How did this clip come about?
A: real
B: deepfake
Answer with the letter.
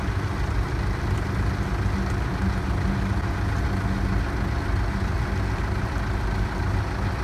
A